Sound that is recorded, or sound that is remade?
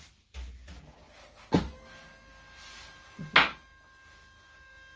recorded